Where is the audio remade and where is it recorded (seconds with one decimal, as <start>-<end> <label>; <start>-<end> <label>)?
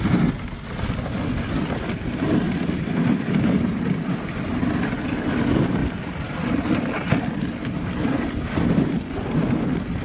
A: 0.0-10.0 recorded